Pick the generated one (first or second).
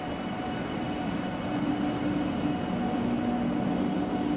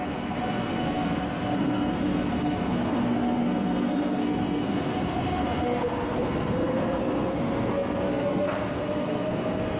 second